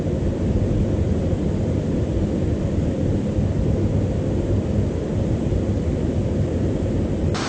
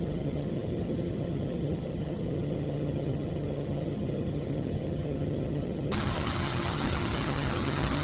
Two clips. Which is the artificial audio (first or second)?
second